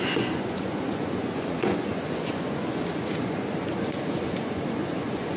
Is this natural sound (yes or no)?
no